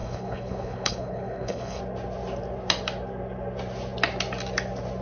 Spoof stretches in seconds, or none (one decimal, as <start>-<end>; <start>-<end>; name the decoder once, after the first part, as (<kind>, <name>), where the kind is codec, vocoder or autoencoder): 0.0-1.8 (codec, HILCodec)

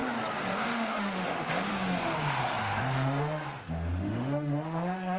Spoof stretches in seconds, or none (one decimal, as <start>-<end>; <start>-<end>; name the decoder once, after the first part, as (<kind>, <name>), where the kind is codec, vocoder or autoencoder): 0.5-1.7 (autoencoder, DAC-VAE); 2.6-5.2